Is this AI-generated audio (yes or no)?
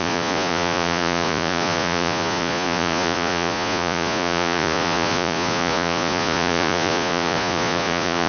yes